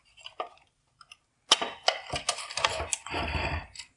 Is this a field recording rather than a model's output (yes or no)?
yes